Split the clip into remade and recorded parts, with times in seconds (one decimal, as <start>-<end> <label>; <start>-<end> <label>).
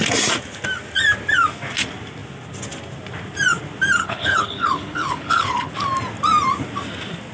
0.0-4.0 recorded; 4.0-5.7 remade; 5.7-7.3 recorded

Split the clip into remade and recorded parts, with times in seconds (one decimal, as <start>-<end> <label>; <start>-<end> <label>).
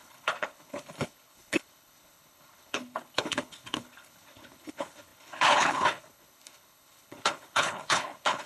0.0-8.5 remade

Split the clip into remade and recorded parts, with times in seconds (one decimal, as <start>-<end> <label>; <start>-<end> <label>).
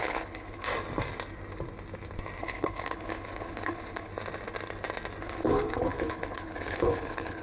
0.0-0.7 remade; 0.7-2.4 recorded; 2.4-4.1 remade; 4.1-5.2 recorded; 5.2-7.4 remade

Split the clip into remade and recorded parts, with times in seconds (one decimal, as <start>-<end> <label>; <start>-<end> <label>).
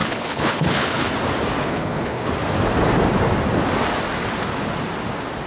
0.0-1.1 remade; 1.1-1.6 recorded; 1.6-2.3 remade; 2.3-5.5 recorded